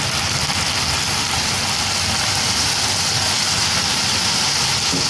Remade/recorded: recorded